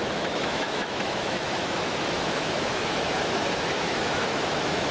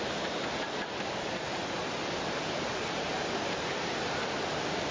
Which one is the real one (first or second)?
second